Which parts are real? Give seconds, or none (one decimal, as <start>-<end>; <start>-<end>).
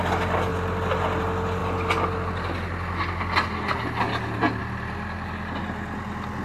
0.0-6.4